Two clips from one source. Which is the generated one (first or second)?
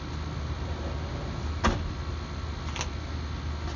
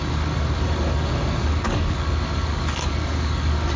second